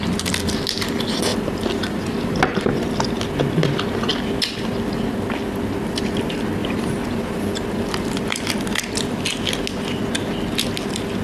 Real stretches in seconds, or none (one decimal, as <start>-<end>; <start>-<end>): 0.0-1.3; 2.4-6.6; 8.5-11.2